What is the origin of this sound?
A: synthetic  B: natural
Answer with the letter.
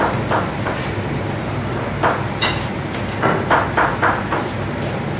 B